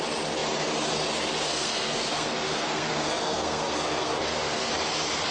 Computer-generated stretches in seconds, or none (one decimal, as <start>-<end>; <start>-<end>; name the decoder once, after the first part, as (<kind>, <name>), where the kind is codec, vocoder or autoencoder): 1.5-4.7 (codec, SNAC)